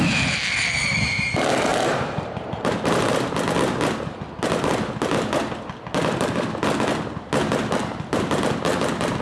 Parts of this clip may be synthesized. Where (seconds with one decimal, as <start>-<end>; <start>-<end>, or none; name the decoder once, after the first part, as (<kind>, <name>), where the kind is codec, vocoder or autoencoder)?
1.7-3.1 (vocoder, BigVGAN v2)